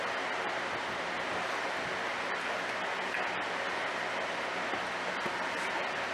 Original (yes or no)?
yes